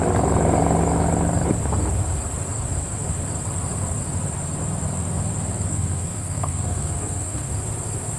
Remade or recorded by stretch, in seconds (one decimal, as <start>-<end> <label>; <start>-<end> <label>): 0.0-5.7 recorded; 5.7-7.5 remade; 7.5-8.2 recorded